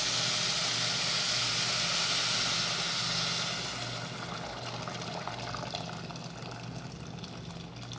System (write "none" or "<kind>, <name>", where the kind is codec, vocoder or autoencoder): none